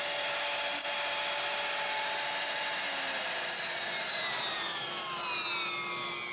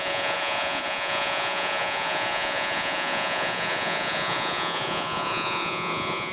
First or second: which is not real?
second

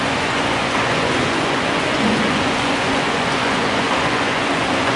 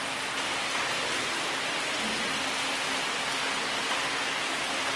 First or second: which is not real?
first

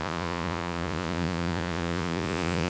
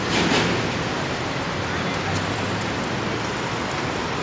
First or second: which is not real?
first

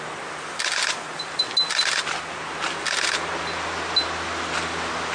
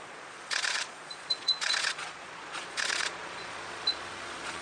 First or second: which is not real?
second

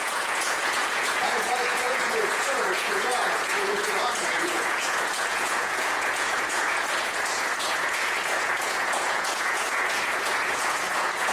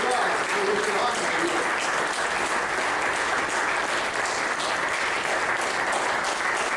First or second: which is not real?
first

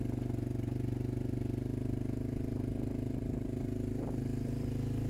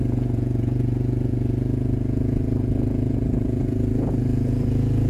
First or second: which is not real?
second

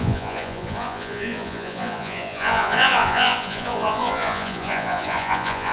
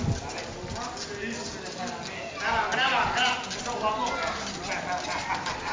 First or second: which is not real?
first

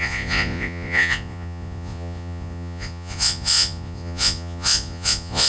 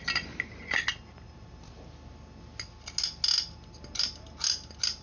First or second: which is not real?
first